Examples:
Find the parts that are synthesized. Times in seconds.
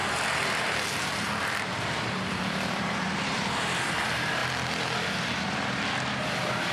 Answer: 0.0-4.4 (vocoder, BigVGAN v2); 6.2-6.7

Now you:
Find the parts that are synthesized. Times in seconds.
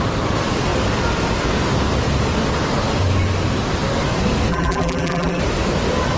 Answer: 4.5-5.4 (vocoder, BigVGAN v2)